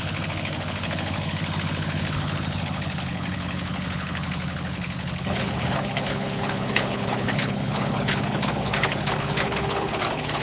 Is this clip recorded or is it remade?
remade